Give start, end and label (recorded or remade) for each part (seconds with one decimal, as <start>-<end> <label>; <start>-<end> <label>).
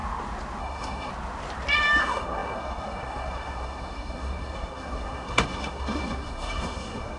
0.0-0.6 recorded; 0.6-1.1 remade; 1.1-2.0 recorded; 2.0-7.2 remade